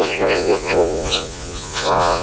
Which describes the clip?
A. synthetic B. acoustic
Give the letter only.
A